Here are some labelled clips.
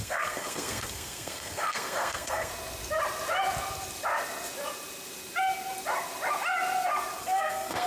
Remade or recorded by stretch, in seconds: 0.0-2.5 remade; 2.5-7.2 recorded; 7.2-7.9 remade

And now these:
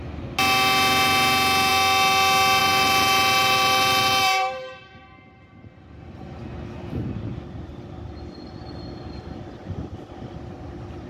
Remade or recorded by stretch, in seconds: 0.0-2.6 recorded; 2.6-6.4 remade; 6.4-11.1 recorded

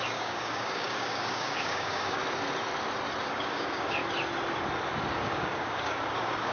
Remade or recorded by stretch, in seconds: 0.0-2.2 remade; 2.2-3.2 recorded; 3.2-4.0 remade; 4.0-5.1 recorded; 5.1-6.5 remade

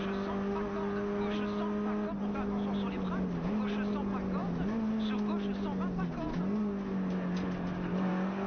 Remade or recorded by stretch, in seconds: 0.0-8.5 recorded

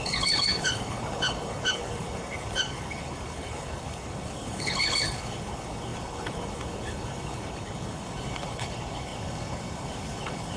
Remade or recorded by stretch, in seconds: 0.0-10.6 remade

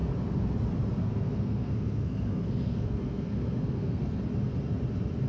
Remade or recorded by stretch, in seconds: 0.0-1.0 recorded; 1.0-4.2 remade; 4.2-5.3 recorded

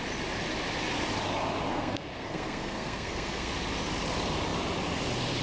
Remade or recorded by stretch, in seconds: 0.0-1.7 recorded; 1.7-3.5 remade; 3.5-5.4 recorded